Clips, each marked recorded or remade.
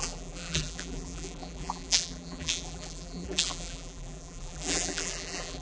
remade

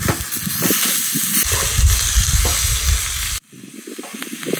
recorded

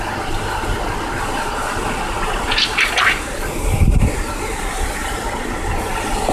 recorded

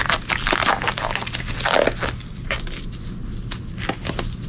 recorded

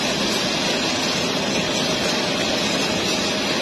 recorded